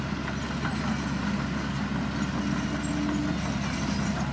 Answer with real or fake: real